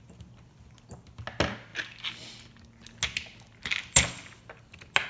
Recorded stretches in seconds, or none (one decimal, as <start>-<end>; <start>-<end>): 0.0-5.1